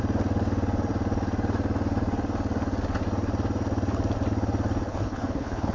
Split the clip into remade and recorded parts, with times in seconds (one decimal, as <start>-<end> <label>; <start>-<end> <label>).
0.0-4.9 recorded; 4.9-5.7 remade